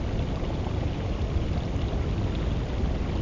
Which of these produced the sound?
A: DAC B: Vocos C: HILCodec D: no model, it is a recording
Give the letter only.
D